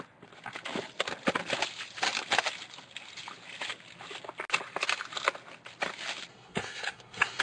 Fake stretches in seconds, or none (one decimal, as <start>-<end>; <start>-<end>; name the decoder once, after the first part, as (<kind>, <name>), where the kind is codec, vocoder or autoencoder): 6.3-7.4 (codec, SNAC)